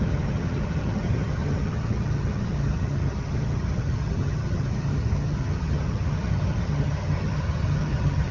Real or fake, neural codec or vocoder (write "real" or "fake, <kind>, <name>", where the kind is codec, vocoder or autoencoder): fake, vocoder, HiFi-GAN